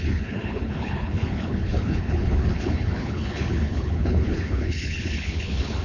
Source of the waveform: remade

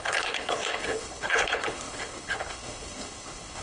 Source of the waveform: remade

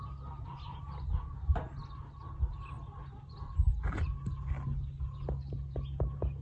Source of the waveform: recorded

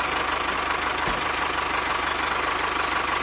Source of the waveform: recorded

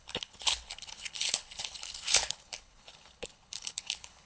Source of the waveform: remade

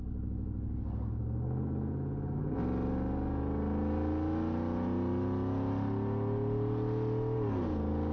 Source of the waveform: recorded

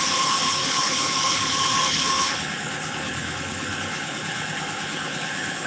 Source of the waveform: remade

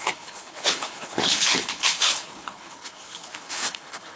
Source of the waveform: remade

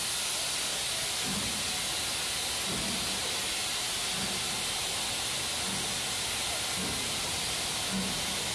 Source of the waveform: recorded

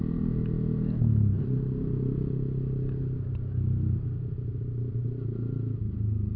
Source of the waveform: recorded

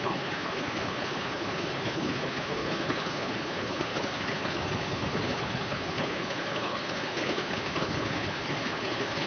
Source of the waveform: remade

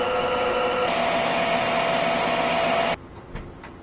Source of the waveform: recorded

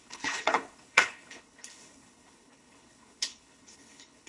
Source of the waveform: remade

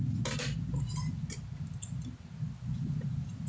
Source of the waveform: recorded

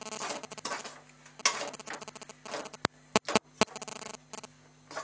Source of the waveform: recorded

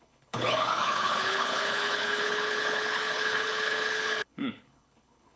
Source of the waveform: remade